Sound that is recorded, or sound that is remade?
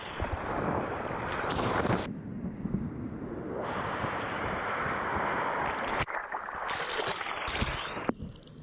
recorded